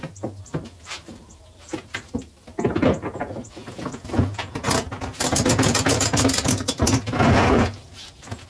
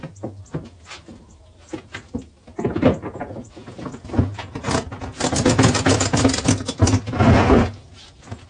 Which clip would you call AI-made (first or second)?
first